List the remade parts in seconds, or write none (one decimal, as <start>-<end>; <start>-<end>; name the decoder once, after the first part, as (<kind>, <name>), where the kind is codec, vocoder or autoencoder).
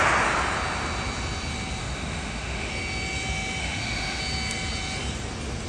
1.8-2.7 (autoencoder, DAC-VAE); 3.6-4.2